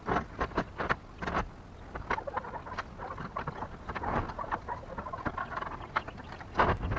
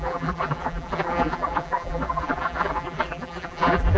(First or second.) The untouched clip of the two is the first